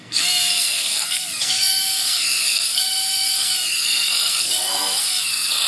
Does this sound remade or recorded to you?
remade